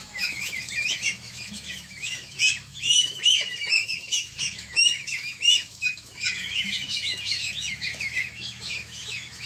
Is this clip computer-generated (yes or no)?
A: yes